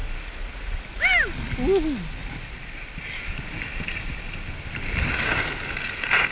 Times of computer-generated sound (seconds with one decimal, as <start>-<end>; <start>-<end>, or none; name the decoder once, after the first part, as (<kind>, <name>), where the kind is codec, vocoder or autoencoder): none